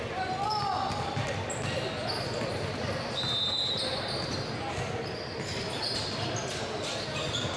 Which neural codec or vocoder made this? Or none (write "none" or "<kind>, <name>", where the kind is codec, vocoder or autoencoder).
none